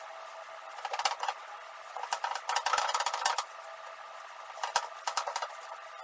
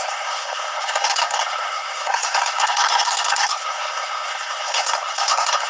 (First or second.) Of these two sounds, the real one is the first